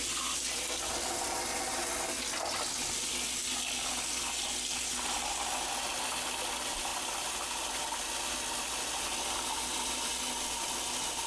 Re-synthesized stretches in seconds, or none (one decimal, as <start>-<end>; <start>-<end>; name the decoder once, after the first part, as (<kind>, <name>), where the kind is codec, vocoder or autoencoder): none